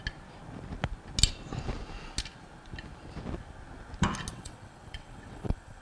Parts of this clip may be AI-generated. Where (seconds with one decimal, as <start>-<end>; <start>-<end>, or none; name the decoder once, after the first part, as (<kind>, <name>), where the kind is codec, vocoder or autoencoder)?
4.3-5.8 (vocoder, WaveNeXt)